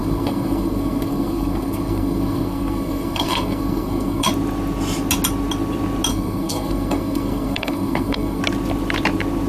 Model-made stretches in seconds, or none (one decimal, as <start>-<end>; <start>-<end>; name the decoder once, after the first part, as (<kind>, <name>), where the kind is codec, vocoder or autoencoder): 0.0-4.3 (codec, SNAC); 6.1-8.4